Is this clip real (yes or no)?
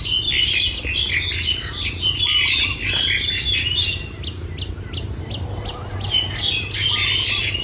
yes